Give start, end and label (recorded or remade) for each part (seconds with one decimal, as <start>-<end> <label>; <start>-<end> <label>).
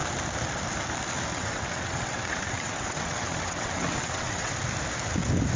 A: 0.0-1.3 recorded; 1.3-4.5 remade; 4.5-5.6 recorded